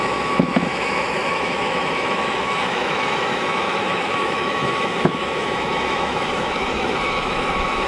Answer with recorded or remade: remade